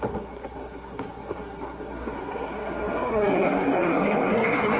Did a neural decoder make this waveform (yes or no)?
yes